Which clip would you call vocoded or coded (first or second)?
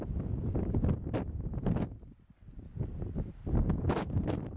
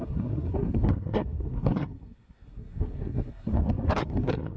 second